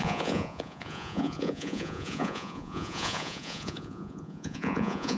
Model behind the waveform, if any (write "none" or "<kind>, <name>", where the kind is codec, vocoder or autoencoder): vocoder, Vocos